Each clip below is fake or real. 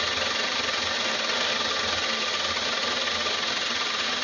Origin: real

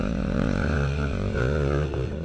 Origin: fake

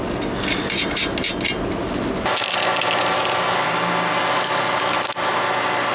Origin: real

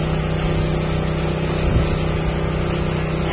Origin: real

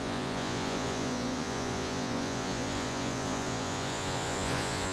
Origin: fake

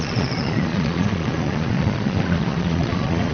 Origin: fake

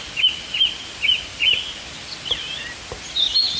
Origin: real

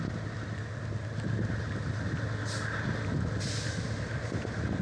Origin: real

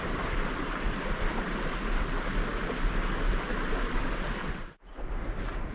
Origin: real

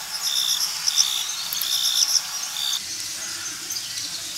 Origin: real